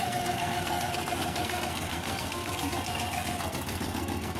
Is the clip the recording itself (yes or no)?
no